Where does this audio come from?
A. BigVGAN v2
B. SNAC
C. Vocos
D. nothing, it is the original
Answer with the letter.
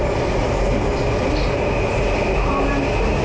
D